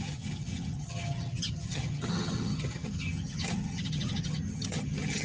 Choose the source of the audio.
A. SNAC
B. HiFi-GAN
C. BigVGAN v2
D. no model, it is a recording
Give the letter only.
B